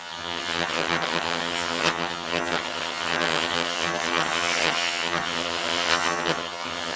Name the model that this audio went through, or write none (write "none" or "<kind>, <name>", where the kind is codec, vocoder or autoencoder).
vocoder, HiFi-GAN